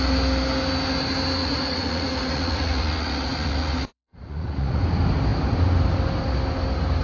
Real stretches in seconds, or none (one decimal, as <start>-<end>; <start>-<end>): 0.0-1.4; 4.8-7.0